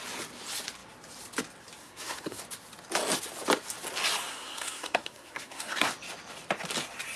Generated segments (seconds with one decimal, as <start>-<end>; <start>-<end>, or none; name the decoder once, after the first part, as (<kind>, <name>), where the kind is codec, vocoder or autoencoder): 1.8-2.4 (codec, SNAC); 4.3-5.9